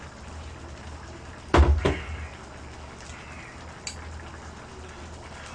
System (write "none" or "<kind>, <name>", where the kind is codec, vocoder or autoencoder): none